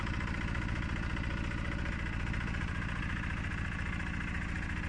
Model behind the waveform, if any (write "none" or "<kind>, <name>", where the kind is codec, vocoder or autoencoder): none